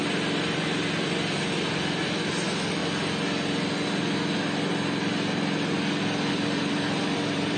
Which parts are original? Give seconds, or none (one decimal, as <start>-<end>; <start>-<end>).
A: 2.8-6.3